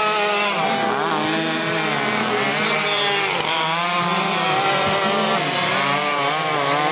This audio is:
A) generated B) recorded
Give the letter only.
B